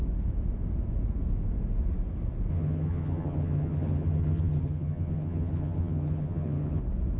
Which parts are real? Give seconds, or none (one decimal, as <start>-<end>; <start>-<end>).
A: 0.0-2.5; 6.8-7.2

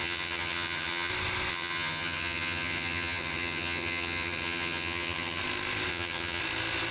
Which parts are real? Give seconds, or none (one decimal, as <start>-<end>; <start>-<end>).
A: 1.1-1.5; 5.4-5.9; 6.4-6.9

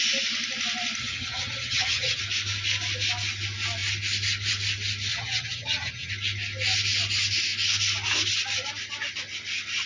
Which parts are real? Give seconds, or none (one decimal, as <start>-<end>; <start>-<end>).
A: 0.0-1.0; 2.2-5.1; 6.1-9.9

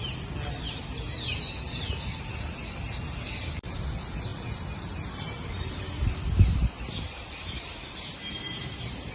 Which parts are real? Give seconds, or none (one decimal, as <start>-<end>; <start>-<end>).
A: 0.0-9.1

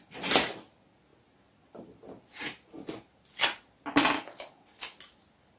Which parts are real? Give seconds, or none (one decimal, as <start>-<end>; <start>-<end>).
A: 0.0-5.6

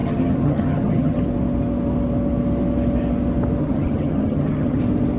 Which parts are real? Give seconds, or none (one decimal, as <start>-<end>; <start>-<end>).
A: 1.2-3.6; 4.8-5.2

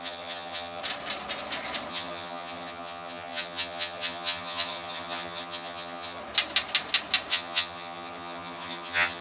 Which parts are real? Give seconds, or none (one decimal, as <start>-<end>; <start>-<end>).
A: 0.8-1.9; 6.2-7.3

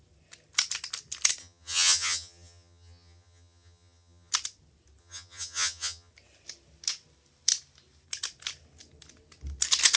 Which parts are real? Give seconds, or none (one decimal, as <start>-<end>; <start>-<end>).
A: 0.0-1.4; 4.3-5.0; 6.1-10.0